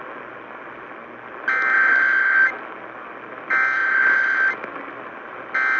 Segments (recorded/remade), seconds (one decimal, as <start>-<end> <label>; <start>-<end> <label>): 0.0-5.8 recorded